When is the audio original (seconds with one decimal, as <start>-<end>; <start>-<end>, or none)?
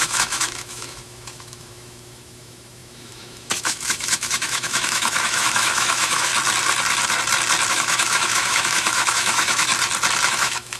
6.3-7.7; 9.7-10.3